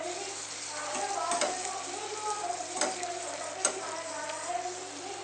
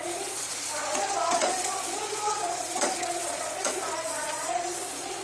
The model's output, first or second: second